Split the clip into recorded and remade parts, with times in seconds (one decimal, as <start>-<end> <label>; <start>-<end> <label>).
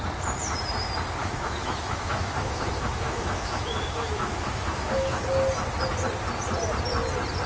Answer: 0.0-1.2 recorded; 1.2-5.2 remade; 5.2-7.5 recorded